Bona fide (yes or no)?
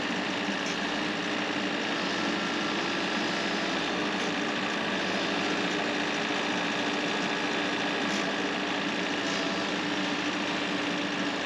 yes